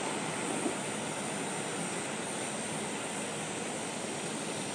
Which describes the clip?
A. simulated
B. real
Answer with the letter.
B